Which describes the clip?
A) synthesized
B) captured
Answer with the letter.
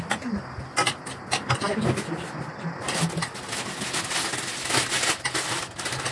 B